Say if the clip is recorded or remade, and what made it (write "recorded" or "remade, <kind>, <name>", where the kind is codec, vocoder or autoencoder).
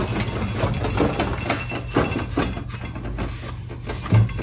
recorded